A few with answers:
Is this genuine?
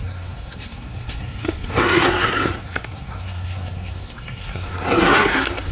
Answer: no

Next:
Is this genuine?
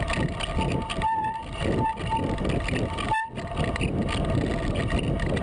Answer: yes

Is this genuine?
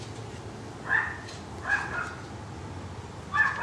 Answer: yes